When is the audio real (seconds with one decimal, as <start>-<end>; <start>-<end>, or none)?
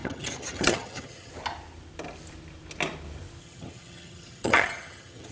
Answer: 1.3-3.4